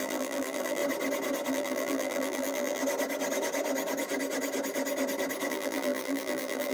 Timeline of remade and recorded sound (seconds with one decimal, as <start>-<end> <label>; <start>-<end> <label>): 0.0-0.8 remade; 0.8-1.5 recorded; 1.5-2.8 remade; 2.8-5.5 recorded; 5.5-6.7 remade